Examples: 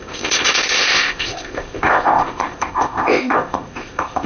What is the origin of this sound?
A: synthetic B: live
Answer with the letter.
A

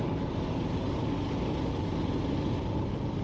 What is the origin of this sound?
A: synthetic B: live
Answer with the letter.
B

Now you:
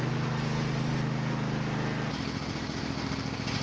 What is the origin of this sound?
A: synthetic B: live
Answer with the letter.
B